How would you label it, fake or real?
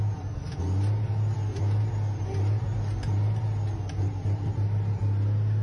real